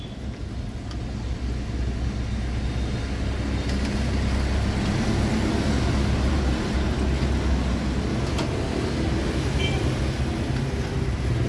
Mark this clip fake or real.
real